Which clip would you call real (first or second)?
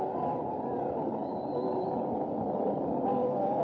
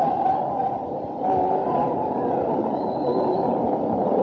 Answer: first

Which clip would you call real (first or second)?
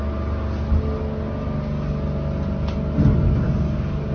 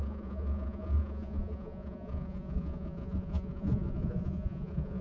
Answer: first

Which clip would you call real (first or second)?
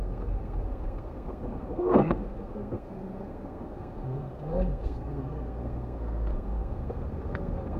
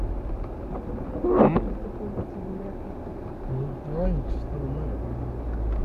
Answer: second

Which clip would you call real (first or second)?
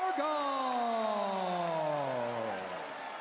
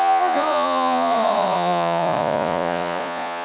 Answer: first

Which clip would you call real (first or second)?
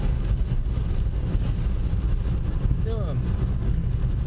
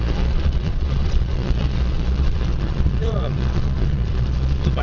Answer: first